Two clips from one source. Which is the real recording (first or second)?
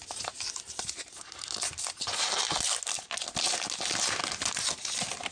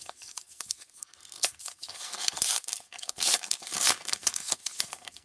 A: first